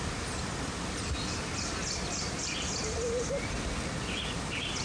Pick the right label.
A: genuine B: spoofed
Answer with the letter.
A